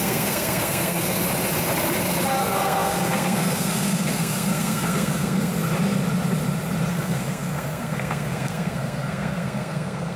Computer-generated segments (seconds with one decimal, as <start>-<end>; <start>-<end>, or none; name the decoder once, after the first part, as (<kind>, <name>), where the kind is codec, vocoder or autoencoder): 0.0-1.2 (codec, SNAC); 2.4-5.5; 6.9-10.2